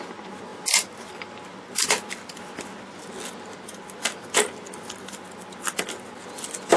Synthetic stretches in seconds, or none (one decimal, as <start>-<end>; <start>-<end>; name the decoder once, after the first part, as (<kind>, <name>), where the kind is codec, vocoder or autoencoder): none